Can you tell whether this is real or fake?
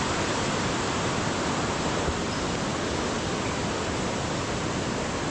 real